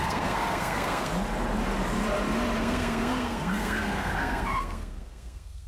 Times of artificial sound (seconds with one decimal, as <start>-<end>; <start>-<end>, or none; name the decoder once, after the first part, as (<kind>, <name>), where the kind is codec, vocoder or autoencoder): 0.0-1.1 (codec, SNAC); 2.6-5.7